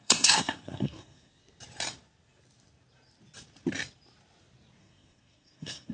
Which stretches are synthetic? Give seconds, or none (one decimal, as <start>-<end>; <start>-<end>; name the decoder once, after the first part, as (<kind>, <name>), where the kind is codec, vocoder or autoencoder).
0.0-1.3 (codec, SNAC); 4.8-5.9